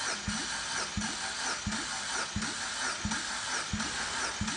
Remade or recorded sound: recorded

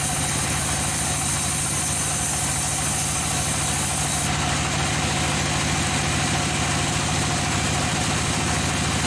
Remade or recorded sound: recorded